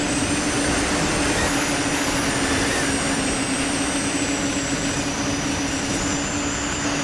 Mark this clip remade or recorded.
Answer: recorded